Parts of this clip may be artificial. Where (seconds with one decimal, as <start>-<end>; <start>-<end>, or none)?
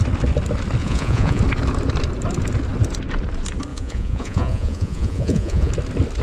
0.8-1.4; 3.7-5.7